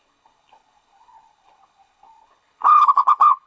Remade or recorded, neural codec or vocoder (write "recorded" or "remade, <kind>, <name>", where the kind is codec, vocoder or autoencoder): remade, codec, HILCodec